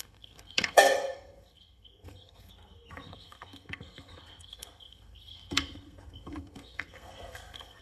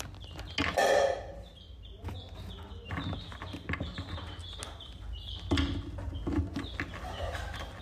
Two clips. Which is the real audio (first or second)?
second